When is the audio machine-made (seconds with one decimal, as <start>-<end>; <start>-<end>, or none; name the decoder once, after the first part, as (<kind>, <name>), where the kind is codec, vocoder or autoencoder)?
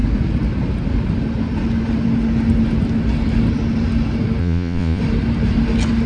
4.4-5.0 (vocoder, Vocos)